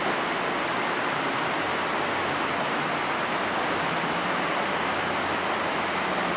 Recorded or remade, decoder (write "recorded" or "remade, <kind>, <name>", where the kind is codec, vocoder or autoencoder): recorded